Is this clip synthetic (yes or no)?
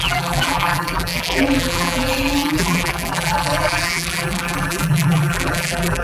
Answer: yes